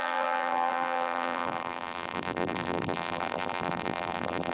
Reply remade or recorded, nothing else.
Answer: remade